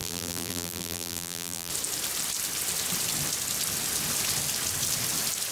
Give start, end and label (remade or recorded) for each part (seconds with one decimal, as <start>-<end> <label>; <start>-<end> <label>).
0.0-1.7 remade; 1.7-5.5 recorded